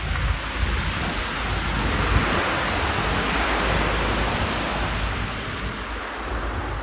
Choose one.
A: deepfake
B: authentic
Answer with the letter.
B